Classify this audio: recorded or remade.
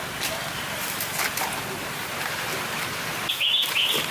recorded